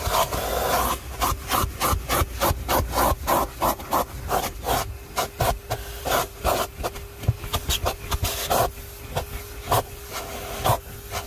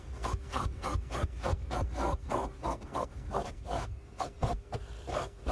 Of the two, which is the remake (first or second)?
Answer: second